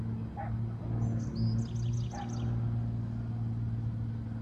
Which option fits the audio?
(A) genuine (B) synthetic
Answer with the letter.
A